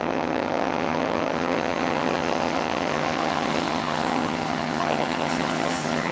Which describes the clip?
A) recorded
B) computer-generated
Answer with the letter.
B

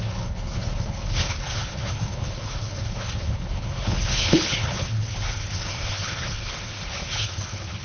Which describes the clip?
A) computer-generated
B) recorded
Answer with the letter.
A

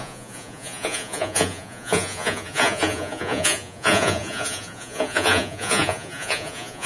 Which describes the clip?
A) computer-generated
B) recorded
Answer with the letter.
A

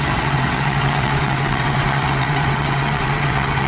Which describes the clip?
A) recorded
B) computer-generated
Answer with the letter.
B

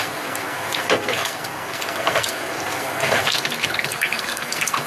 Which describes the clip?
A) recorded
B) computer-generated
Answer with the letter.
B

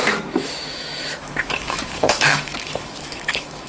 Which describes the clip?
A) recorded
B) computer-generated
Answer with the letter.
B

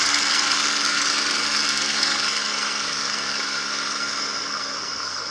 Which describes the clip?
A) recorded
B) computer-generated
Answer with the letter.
B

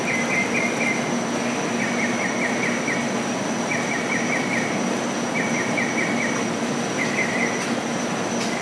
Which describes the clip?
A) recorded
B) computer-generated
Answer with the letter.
A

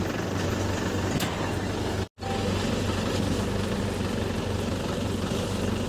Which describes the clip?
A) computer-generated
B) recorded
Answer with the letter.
B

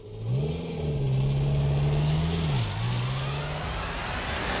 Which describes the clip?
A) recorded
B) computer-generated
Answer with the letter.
A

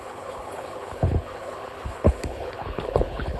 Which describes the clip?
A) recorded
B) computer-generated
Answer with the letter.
B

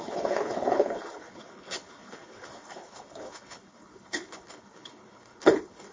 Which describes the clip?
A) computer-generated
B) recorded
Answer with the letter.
A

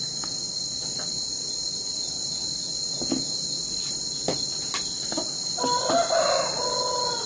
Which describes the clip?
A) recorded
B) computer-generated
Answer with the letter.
A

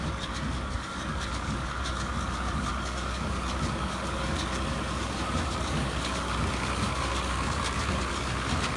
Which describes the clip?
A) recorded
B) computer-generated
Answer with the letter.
B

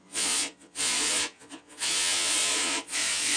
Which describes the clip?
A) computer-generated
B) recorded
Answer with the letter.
A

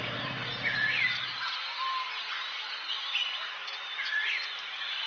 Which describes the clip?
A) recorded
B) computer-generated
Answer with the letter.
A